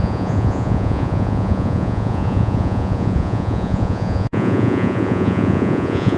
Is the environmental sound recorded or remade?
remade